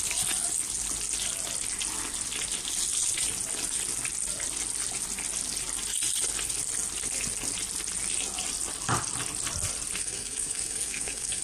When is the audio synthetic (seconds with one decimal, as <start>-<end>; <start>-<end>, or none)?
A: 10.0-11.4

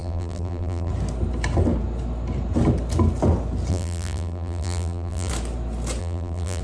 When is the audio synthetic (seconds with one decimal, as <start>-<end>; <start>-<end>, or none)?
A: 0.0-0.9; 3.7-5.3; 6.0-6.6

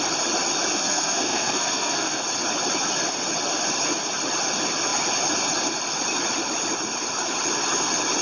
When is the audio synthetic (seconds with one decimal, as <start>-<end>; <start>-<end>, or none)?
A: 0.7-2.2

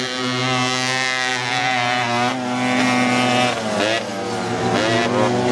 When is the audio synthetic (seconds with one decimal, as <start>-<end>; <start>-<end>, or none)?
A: none

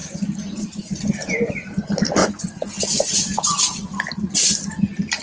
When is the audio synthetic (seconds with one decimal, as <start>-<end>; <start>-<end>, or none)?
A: 2.2-2.8